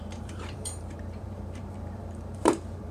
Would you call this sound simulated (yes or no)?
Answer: yes